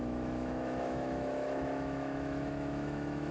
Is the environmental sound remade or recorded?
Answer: remade